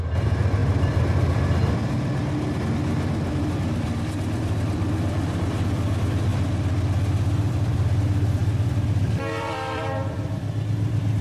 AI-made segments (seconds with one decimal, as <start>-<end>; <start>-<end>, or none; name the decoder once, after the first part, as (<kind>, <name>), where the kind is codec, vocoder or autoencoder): 0.0-6.3 (vocoder, BigVGAN v2); 7.5-11.2